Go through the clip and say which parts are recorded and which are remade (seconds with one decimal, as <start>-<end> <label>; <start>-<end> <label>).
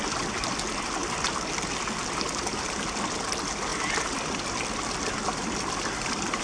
0.0-6.4 recorded